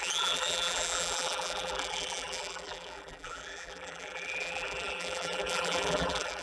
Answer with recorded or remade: remade